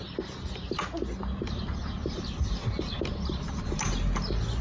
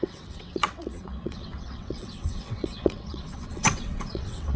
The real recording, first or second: first